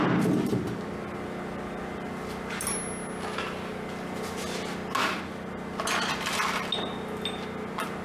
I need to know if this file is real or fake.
real